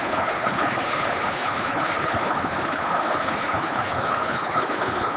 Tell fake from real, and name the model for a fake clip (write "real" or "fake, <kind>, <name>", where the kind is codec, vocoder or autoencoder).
fake, codec, HILCodec